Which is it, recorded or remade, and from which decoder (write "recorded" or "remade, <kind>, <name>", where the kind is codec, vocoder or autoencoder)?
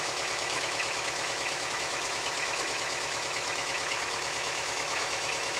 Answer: remade, autoencoder, DAC-VAE